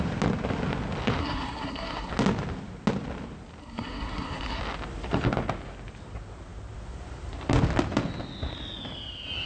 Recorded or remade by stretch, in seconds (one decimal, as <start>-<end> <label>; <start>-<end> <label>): 0.0-1.2 recorded; 1.2-2.1 remade; 2.1-3.6 recorded; 3.6-4.6 remade; 4.6-9.5 recorded